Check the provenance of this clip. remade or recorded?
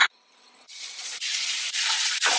remade